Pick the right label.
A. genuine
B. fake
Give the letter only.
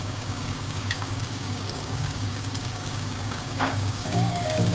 B